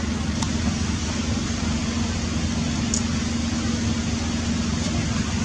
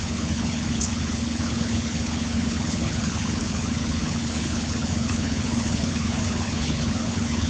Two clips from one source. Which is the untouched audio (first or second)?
first